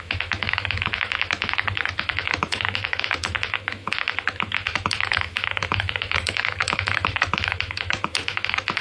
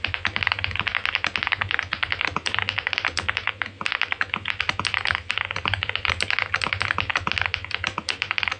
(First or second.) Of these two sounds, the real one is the second